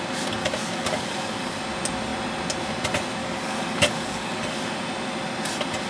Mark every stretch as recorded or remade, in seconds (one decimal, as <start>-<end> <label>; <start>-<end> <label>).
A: 0.0-0.4 recorded; 0.4-1.6 remade; 1.6-3.2 recorded; 3.2-4.7 remade; 4.7-5.9 recorded